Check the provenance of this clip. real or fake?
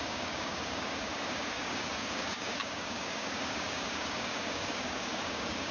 fake